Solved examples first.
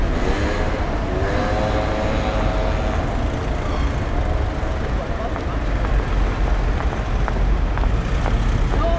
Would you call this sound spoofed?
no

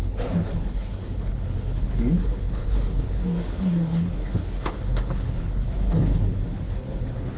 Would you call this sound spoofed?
yes